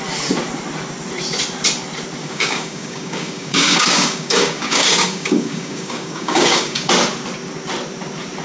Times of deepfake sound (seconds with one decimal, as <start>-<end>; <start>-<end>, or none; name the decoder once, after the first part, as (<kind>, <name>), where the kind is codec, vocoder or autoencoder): 2.2-6.9 (codec, DAC)